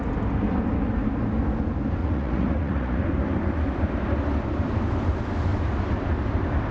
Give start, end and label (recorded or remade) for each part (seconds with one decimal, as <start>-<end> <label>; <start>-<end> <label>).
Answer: 0.0-2.0 recorded; 2.0-3.0 remade; 3.0-6.7 recorded